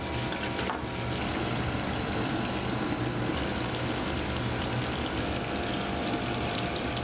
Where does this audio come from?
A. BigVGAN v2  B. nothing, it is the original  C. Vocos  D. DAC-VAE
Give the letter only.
B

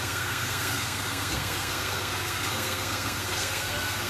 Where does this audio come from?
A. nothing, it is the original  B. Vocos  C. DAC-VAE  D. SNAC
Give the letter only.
D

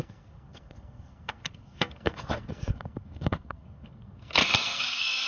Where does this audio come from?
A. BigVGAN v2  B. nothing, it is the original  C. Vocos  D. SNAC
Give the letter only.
D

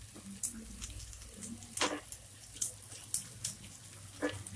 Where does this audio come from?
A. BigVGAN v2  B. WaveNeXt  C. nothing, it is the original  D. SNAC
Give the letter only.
C